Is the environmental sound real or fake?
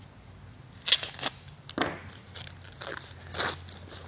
real